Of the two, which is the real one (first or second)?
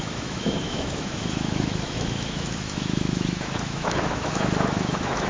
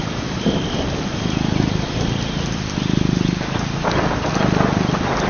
second